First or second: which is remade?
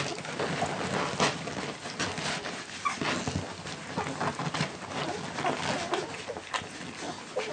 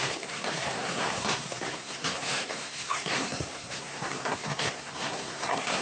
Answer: second